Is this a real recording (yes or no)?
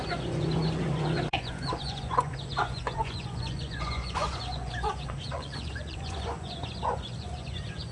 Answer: no